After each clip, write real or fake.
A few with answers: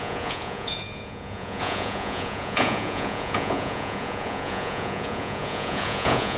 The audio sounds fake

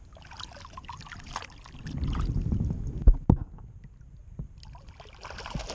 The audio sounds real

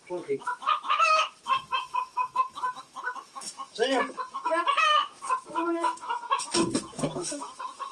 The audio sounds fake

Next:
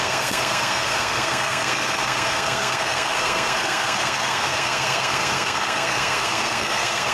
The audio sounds fake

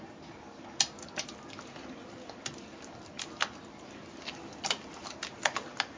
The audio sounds real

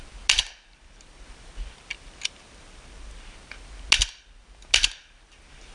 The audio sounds real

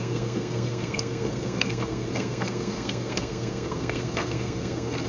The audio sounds fake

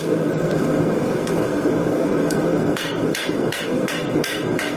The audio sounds fake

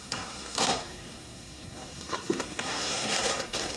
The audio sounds fake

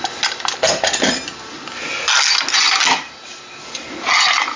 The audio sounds real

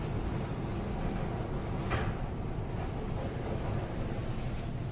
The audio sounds real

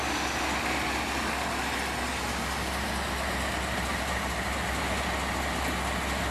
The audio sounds real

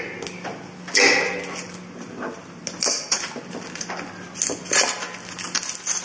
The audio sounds real